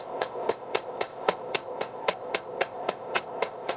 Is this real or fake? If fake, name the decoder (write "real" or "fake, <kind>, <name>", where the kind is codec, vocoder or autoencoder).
fake, codec, ZipCodec